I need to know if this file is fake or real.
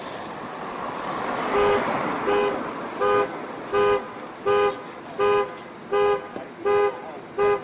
real